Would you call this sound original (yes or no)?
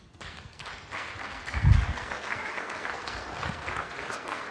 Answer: no